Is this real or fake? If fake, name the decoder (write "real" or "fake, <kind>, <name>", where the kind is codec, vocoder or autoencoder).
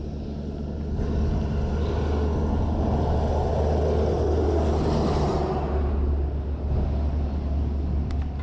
real